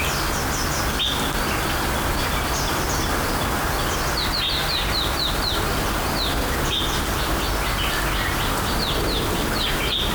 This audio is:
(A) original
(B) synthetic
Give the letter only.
A